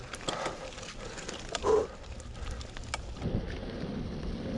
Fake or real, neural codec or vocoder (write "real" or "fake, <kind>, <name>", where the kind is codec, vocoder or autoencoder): real